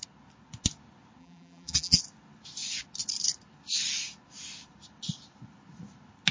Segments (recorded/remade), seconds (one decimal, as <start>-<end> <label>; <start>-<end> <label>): 0.0-1.2 recorded; 1.2-2.0 remade; 2.0-6.3 recorded